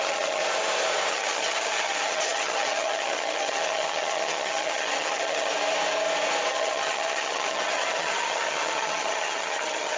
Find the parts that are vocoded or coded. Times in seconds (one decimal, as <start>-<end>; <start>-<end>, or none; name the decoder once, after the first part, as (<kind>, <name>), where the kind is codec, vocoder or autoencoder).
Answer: 0.0-0.4 (vocoder, HiFi-GAN); 1.1-5.5; 6.5-10.0